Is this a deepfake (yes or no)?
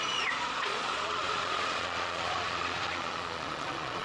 yes